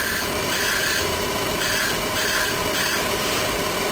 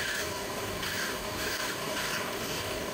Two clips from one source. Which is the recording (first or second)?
first